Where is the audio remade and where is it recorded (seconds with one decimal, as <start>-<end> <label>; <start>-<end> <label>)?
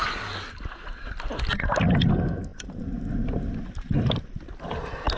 0.0-5.2 recorded